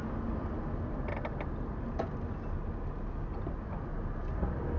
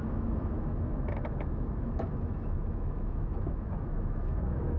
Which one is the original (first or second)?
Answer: first